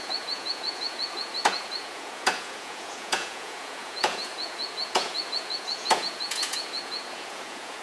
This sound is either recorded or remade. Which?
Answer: remade